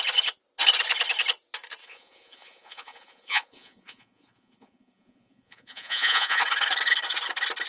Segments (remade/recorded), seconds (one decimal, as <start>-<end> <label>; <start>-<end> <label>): 0.0-1.8 recorded; 1.8-6.4 remade; 6.4-7.7 recorded